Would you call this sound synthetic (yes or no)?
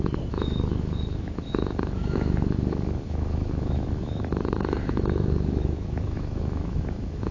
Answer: yes